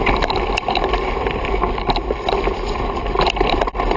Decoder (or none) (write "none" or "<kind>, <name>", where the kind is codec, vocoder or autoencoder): vocoder, BigVGAN v2